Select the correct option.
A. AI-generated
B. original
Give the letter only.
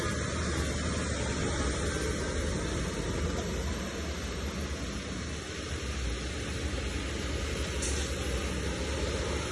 B